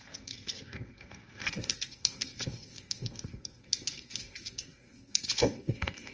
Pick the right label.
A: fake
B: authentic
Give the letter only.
A